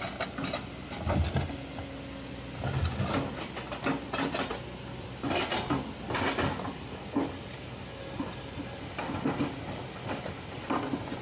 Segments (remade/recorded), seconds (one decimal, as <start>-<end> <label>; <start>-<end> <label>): 0.0-11.2 recorded